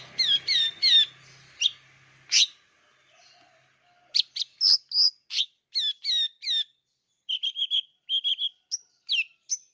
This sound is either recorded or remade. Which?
recorded